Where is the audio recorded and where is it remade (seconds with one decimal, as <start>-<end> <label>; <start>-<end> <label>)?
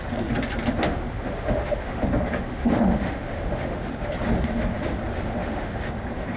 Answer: 0.0-0.8 recorded; 0.8-2.0 remade; 2.0-2.5 recorded; 2.5-4.1 remade; 4.1-5.1 recorded; 5.1-5.9 remade; 5.9-6.4 recorded